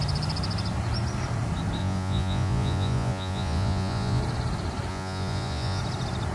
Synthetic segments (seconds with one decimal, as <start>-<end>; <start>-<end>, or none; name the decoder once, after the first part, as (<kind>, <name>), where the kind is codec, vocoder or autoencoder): 1.8-4.2 (vocoder, Vocos); 4.9-5.8